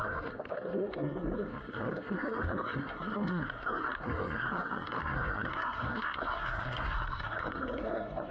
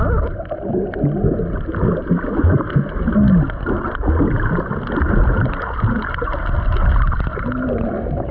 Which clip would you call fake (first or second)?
first